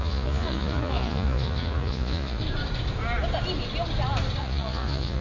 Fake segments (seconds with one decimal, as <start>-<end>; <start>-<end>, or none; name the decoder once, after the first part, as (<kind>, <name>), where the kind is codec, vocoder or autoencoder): 0.0-2.4 (vocoder, Vocos); 4.4-5.2

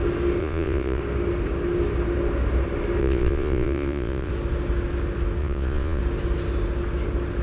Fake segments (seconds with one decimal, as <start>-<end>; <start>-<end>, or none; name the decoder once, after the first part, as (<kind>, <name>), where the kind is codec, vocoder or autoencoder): 0.4-1.0 (vocoder, Vocos); 3.0-4.3; 5.4-6.0